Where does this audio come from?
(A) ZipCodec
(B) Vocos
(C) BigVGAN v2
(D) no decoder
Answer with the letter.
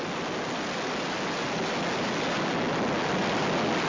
D